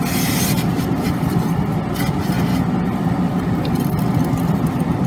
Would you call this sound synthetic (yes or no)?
no